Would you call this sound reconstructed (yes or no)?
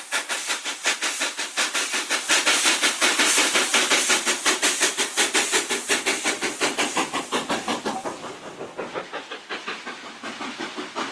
no